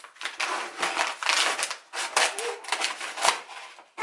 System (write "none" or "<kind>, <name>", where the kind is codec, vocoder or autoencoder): none